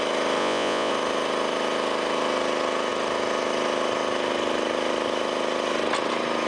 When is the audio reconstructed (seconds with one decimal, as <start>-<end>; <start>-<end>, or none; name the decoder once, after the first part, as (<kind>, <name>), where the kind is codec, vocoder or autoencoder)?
0.4-0.9 (vocoder, Vocos)